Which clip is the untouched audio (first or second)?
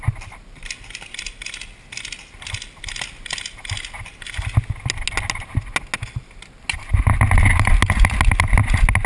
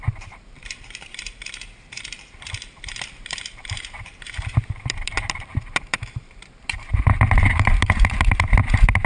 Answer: first